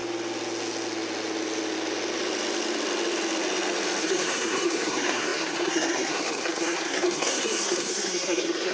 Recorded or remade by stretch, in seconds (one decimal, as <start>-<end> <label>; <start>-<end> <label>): 0.0-4.0 recorded; 4.0-8.7 remade